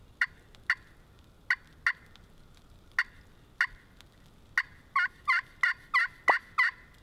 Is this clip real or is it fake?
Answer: real